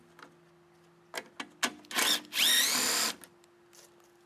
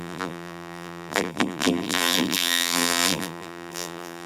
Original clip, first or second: first